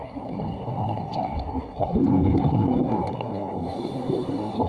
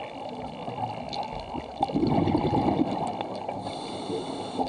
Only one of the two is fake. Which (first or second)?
first